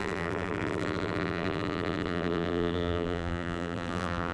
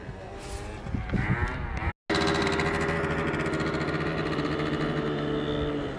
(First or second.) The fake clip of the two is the first